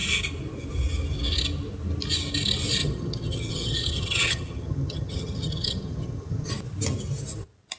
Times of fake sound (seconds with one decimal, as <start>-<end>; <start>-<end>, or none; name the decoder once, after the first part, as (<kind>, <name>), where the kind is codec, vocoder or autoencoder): 2.8-6.5 (vocoder, HiFi-GAN)

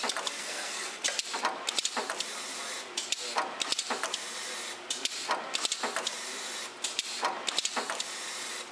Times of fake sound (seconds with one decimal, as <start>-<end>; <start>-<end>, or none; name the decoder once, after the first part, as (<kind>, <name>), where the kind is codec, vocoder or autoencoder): 0.4-1.0 (codec, SNAC)

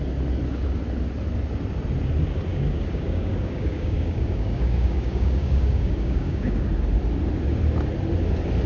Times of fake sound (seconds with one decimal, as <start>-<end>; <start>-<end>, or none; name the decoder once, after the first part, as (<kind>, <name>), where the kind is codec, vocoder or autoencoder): 2.5-6.7 (codec, DAC)

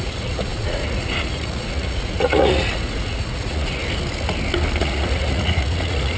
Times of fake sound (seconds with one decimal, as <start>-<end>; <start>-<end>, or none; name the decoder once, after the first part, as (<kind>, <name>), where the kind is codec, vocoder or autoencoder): 0.0-3.8 (vocoder, Vocos); 4.8-6.2

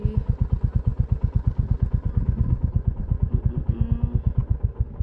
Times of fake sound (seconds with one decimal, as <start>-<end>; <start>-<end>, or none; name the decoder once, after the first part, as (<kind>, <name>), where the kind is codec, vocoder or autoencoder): 0.9-3.9 (vocoder, BigVGAN v2)

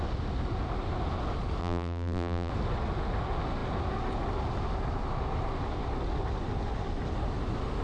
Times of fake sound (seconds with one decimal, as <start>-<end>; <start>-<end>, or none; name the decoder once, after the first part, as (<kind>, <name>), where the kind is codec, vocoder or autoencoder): 1.6-2.5 (vocoder, BigVGAN v2)

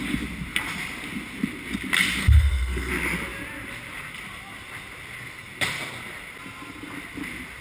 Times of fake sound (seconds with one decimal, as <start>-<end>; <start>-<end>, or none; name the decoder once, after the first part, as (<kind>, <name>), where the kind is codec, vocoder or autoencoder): 2.2-2.9 (codec, SNAC)

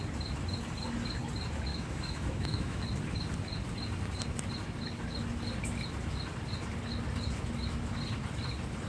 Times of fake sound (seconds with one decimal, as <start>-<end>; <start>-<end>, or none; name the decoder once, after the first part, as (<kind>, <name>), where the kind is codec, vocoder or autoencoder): 1.7-2.8 (autoencoder, DAC-VAE)